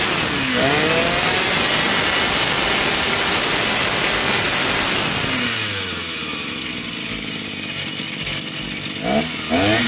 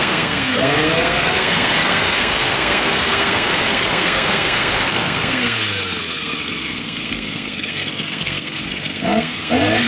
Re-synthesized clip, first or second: second